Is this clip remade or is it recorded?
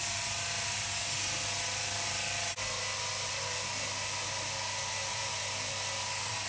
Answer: recorded